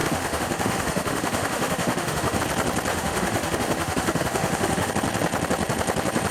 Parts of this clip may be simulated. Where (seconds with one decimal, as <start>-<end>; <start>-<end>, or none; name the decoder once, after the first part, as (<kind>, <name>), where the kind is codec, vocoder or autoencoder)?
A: 0.0-2.4 (autoencoder, DAC-VAE); 2.9-4.9